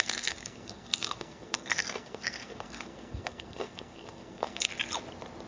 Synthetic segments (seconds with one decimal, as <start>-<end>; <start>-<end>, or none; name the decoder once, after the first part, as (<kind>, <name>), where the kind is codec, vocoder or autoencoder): 0.0-4.7 (codec, SNAC)